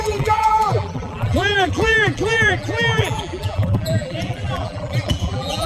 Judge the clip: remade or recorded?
remade